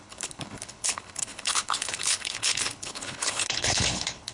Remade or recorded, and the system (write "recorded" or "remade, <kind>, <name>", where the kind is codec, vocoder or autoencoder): remade, codec, HILCodec